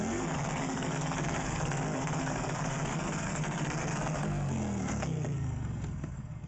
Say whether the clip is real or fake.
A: fake